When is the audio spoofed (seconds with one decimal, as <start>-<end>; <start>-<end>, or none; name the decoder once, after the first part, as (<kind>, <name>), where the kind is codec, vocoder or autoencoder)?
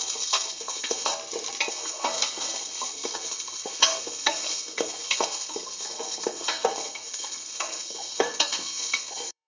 0.0-1.1 (codec, SNAC); 1.7-9.5